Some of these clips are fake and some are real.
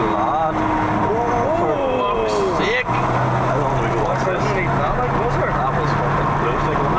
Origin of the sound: real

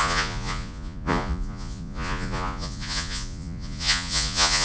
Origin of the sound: fake